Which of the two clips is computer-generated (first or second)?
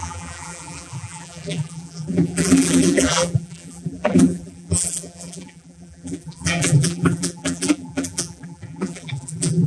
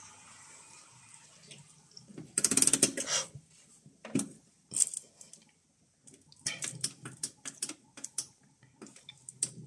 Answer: first